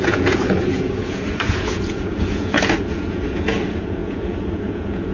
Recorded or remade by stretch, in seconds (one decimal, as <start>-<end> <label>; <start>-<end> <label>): 0.0-5.1 remade